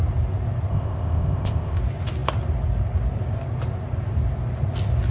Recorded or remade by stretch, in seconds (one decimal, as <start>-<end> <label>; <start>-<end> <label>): 0.0-0.7 recorded; 0.7-1.8 remade; 1.8-5.1 recorded